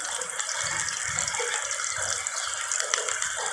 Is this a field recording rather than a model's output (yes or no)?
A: yes